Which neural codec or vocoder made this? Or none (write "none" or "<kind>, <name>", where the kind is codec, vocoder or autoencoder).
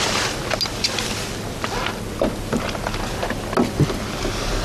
none